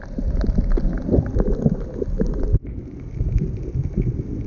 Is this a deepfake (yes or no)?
no